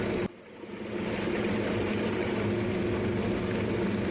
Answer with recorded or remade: recorded